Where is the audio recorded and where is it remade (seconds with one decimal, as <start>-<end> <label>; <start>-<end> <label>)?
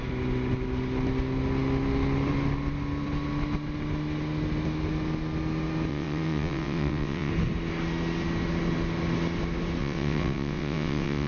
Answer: 0.0-5.9 recorded; 5.9-7.3 remade; 7.3-9.8 recorded; 9.8-11.3 remade